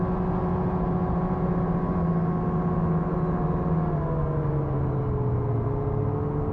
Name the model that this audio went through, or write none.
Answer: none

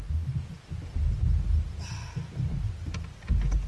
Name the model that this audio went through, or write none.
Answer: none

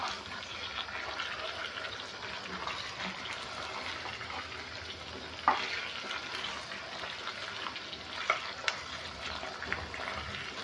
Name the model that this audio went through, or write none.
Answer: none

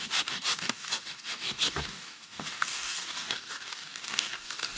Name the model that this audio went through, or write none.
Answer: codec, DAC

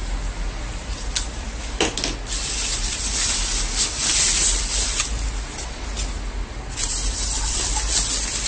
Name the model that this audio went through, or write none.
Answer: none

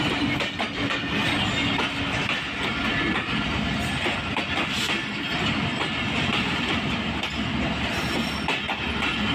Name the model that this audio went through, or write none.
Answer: none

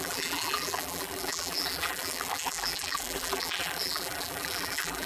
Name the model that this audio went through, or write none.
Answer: vocoder, BigVGAN v2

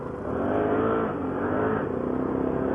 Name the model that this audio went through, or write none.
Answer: none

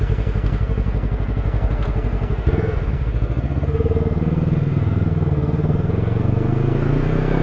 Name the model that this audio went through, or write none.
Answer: codec, SNAC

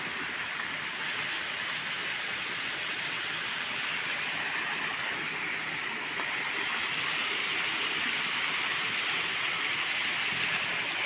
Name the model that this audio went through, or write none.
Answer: none